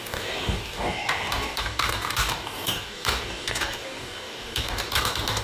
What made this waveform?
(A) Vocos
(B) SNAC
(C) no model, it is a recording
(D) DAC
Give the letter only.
D